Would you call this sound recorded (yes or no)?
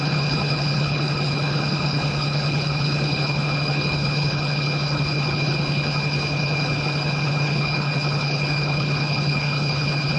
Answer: no